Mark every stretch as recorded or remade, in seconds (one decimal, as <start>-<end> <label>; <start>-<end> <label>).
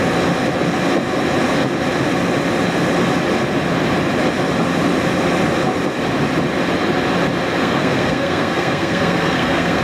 0.0-7.6 recorded; 7.6-9.8 remade